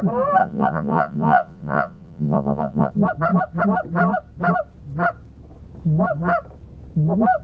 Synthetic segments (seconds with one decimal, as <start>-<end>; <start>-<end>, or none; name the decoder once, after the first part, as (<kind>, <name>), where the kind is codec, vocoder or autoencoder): 0.4-2.9 (vocoder, Vocos)